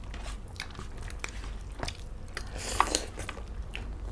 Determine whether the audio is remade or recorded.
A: recorded